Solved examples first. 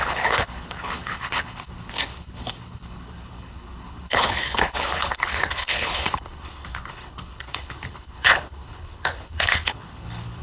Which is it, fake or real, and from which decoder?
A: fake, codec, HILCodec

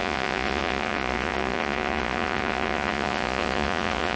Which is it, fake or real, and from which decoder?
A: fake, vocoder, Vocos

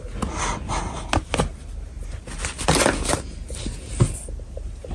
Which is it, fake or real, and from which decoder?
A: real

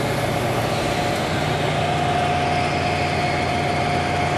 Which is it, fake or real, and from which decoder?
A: real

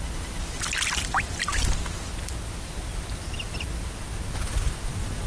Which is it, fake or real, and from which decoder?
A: real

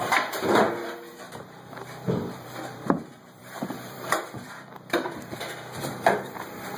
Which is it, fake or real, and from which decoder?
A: fake, vocoder, BigVGAN v2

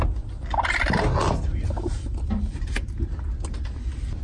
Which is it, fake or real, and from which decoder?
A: real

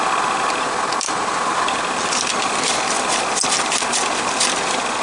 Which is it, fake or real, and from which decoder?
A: real